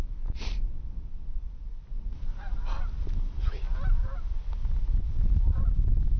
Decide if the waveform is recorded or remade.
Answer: recorded